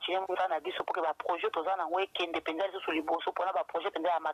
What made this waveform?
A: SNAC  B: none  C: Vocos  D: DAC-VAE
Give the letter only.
B